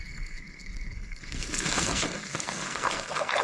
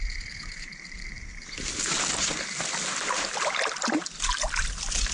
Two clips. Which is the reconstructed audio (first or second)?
first